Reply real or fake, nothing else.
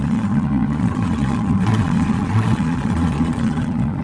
fake